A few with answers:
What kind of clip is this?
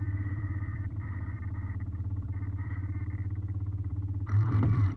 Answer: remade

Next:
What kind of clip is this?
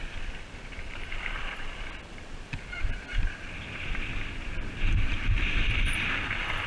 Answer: recorded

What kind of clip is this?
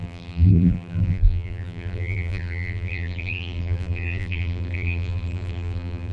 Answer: remade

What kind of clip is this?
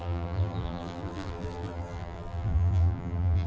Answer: remade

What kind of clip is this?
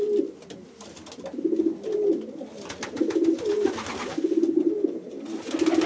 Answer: recorded